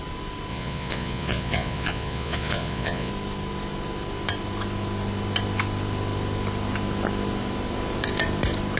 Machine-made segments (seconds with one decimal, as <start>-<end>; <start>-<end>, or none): 0.5-3.1